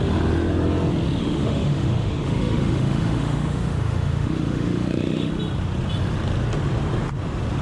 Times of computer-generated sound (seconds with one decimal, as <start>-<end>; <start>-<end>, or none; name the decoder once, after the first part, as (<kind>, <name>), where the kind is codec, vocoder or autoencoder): 1.2-5.3 (autoencoder, DAC-VAE)